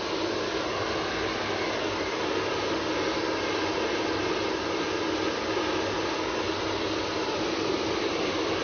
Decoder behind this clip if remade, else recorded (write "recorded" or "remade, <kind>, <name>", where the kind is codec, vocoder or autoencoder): recorded